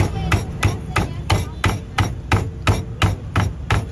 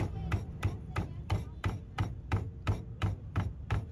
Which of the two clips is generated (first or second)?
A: second